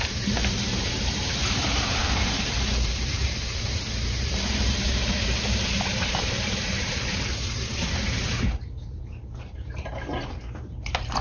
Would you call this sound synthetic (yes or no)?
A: yes